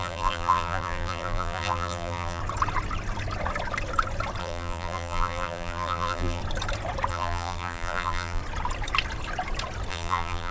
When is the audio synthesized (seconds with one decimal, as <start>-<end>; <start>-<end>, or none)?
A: 0.0-2.4; 4.4-6.4; 7.1-8.4; 9.9-10.5